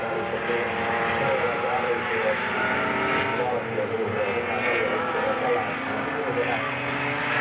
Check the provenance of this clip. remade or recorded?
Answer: recorded